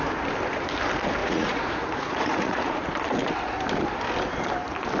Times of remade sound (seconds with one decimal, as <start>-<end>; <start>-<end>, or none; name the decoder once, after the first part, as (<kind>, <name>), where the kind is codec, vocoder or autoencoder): 1.2-2.8 (vocoder, Vocos)